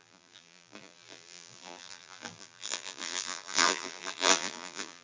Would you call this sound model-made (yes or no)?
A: yes